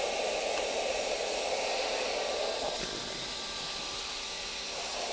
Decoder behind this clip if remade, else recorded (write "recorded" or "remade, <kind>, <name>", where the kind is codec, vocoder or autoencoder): recorded